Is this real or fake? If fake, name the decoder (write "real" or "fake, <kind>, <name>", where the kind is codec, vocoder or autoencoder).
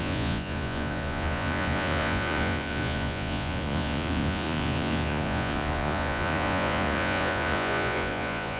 fake, vocoder, Vocos